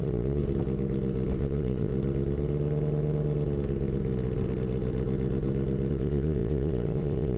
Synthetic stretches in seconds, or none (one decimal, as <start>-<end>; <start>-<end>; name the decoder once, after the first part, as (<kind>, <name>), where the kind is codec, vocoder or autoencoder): 0.0-0.4 (vocoder, Vocos); 1.4-1.9; 5.9-7.4